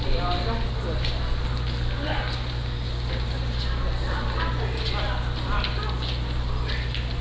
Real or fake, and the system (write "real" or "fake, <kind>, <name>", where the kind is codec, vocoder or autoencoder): real